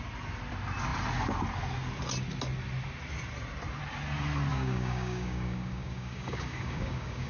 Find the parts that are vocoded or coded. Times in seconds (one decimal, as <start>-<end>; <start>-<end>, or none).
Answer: 4.5-7.3